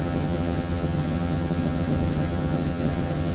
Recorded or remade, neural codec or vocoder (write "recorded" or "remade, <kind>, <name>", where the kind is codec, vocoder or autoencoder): remade, vocoder, HiFi-GAN